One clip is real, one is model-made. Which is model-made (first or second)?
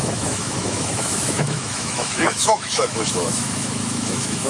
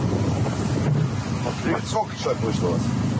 first